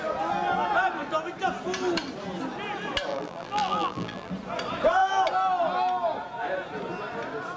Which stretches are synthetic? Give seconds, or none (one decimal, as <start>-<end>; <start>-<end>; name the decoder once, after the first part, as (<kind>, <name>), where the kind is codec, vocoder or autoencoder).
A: 3.1-4.3 (vocoder, BigVGAN v2)